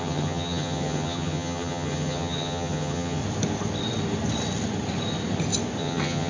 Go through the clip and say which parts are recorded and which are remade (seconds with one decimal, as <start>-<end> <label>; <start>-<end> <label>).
0.0-3.2 remade; 3.2-5.8 recorded; 5.8-6.3 remade